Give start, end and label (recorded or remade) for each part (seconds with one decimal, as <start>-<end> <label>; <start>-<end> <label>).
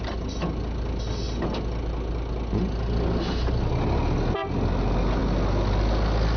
0.0-6.4 recorded